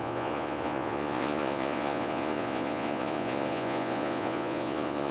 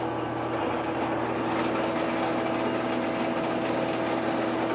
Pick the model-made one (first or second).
first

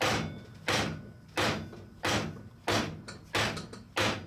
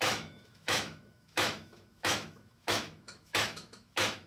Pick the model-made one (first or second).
second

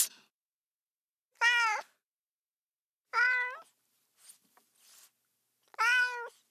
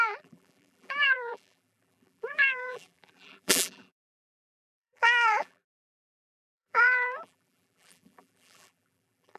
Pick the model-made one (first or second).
second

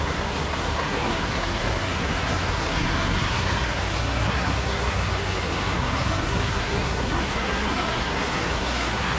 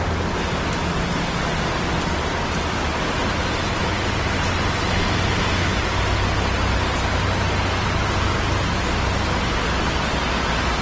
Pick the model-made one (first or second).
first